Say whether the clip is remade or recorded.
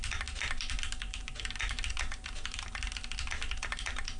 recorded